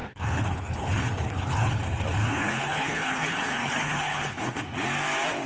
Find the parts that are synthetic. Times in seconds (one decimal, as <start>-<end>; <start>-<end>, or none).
0.0-1.8; 2.2-4.6